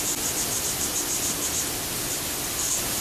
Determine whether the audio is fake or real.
real